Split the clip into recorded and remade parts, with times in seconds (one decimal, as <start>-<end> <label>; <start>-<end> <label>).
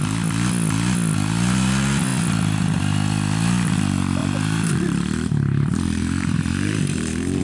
0.0-4.2 recorded; 4.2-7.4 remade